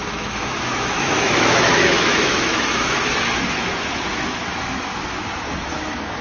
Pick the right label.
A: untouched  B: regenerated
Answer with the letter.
B